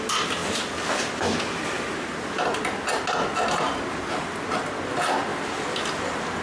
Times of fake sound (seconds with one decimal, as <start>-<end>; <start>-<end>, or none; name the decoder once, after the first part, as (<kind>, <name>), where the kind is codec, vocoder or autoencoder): none